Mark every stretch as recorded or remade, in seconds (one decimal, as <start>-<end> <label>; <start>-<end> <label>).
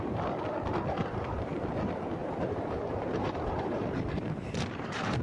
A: 0.0-1.0 recorded; 1.0-1.6 remade; 1.6-2.2 recorded; 2.2-5.2 remade